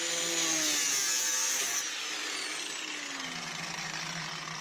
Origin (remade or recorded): recorded